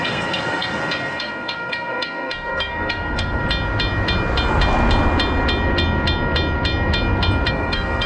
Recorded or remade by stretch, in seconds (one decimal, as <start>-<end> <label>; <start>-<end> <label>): 0.0-3.4 remade; 3.4-7.5 recorded; 7.5-8.1 remade